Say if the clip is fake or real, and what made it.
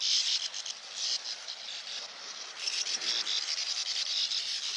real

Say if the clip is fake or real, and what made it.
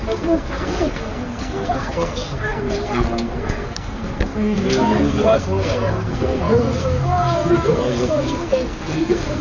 fake, codec, SNAC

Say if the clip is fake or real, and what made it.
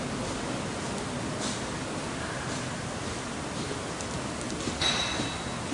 real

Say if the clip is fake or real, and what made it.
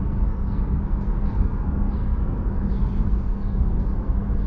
fake, codec, SNAC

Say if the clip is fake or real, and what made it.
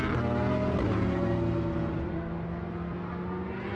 real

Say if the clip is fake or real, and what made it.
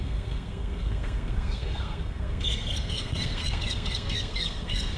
fake, codec, SNAC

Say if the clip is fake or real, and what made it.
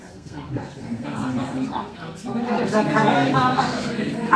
fake, codec, SNAC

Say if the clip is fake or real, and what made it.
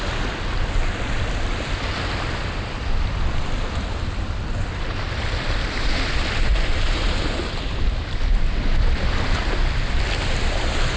real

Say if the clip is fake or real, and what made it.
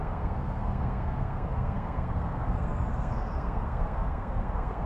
fake, codec, SNAC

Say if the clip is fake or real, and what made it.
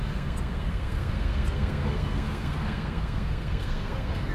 fake, codec, SNAC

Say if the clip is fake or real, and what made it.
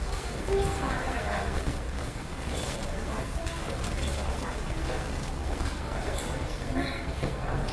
fake, codec, SNAC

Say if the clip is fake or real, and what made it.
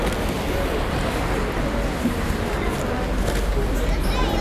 real